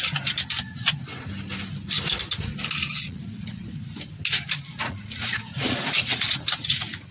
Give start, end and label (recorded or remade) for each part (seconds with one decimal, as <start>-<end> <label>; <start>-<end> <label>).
0.0-3.0 recorded; 3.0-3.6 remade; 3.6-4.8 recorded; 4.8-7.1 remade